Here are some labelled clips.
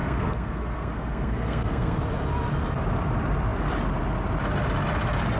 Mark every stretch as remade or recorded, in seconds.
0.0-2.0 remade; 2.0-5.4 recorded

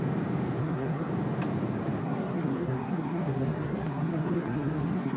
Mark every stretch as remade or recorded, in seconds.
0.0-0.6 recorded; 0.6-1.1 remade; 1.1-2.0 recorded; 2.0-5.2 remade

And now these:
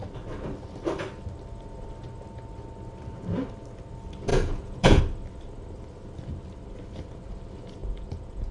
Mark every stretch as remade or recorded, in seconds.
0.0-4.3 recorded; 4.3-5.0 remade; 5.0-7.8 recorded; 7.8-8.5 remade